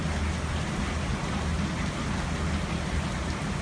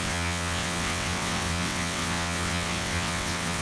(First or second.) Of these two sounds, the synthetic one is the second